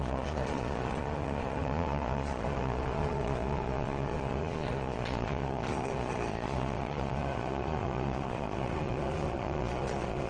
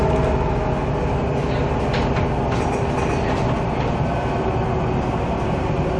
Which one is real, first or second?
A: second